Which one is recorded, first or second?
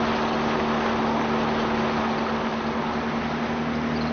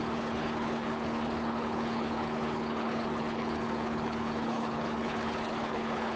first